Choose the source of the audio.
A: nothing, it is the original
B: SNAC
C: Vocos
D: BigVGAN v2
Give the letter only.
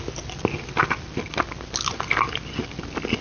A